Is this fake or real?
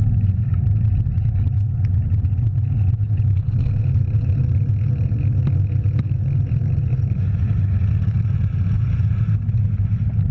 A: real